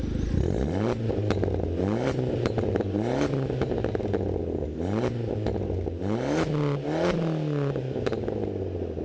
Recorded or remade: recorded